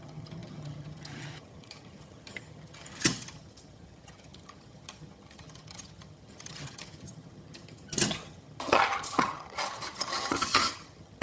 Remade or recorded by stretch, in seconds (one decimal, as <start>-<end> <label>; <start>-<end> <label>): 0.0-11.2 remade